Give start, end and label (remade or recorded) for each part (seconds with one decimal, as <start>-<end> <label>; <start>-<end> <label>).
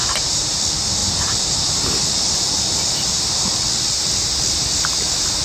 0.0-0.6 remade; 0.6-1.0 recorded; 1.0-3.5 remade; 3.5-5.4 recorded